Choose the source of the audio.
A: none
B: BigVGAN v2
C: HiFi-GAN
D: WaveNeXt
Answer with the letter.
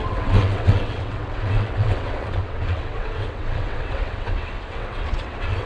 D